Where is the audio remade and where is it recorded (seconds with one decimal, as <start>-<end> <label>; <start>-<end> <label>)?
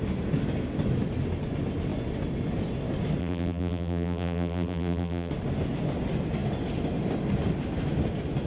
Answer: 0.0-3.2 recorded; 3.2-5.3 remade; 5.3-8.5 recorded